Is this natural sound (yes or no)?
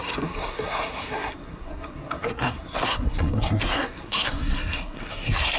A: no